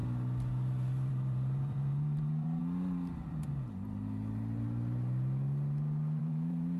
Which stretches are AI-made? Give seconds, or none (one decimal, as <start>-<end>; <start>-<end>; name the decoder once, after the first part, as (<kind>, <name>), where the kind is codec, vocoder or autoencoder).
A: 1.1-2.6 (vocoder, BigVGAN v2); 6.2-6.8